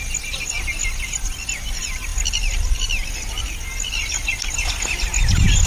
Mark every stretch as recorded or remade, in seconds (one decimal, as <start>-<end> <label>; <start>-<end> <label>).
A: 0.0-5.7 recorded